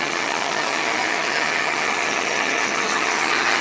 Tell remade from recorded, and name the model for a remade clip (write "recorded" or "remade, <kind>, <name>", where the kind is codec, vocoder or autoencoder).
remade, vocoder, HiFi-GAN